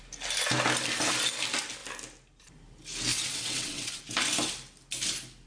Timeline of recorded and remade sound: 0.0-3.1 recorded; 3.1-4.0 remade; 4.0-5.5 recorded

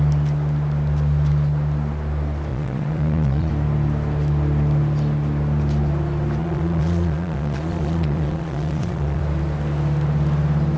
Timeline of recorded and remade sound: 0.0-2.5 recorded; 2.5-3.5 remade; 3.5-6.4 recorded; 6.4-9.2 remade; 9.2-10.8 recorded